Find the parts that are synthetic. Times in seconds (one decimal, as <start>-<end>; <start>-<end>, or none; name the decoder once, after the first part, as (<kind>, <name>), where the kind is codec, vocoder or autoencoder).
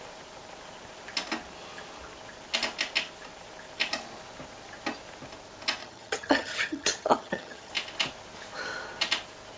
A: 5.8-7.7 (vocoder, HiFi-GAN)